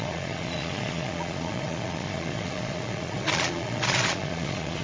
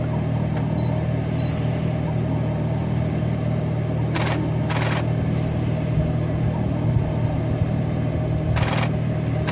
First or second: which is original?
second